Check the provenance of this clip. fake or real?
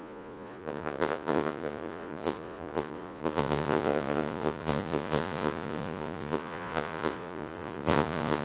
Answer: fake